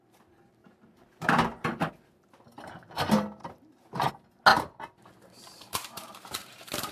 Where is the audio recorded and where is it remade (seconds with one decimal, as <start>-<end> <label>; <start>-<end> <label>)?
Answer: 0.0-0.6 recorded; 0.6-1.9 remade; 1.9-4.5 recorded; 4.5-6.9 remade